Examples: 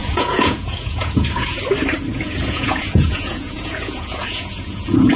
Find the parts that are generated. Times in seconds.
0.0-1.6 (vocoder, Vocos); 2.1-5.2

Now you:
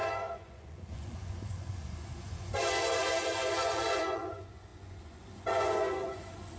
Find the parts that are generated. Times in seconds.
0.0-6.6 (vocoder, Vocos)

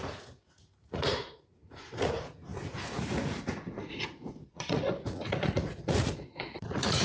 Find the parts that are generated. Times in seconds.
0.0-7.0 (vocoder, Vocos)